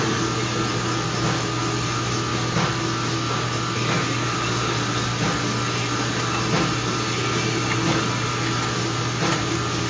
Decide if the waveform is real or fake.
real